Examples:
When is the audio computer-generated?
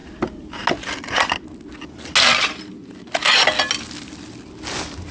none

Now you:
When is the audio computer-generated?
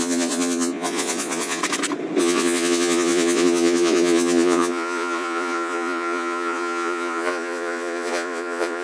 0.0-1.6 (vocoder, Vocos); 2.2-8.8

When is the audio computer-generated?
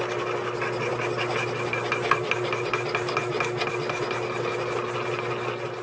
none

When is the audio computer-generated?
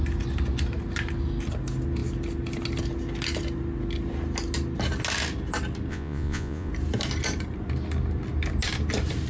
5.9-6.7 (vocoder, Vocos)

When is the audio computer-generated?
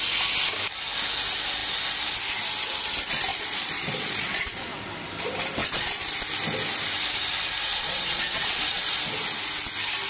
3.3-4.8 (vocoder, Vocos); 5.6-6.1; 7.7-8.9